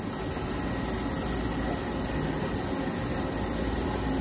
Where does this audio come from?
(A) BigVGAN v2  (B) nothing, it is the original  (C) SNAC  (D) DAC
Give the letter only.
B